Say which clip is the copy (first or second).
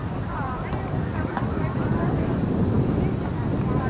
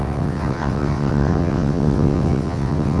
second